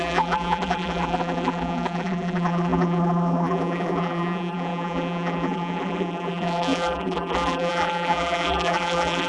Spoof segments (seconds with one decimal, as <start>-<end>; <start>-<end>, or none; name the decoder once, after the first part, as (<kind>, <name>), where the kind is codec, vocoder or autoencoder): 0.0-9.3 (vocoder, BigVGAN v2)